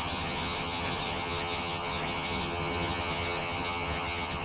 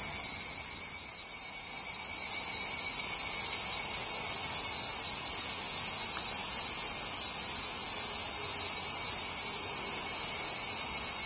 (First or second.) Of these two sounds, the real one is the second